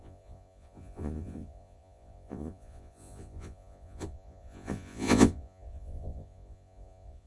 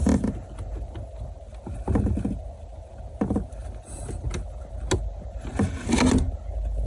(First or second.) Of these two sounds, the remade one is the first